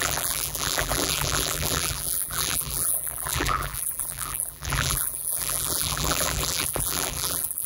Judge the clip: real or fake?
fake